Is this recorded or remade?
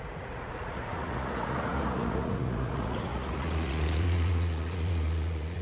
remade